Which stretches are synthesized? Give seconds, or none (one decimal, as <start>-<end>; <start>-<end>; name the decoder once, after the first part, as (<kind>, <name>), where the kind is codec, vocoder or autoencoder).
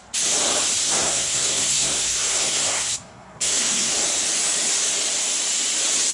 0.8-3.9 (codec, SNAC)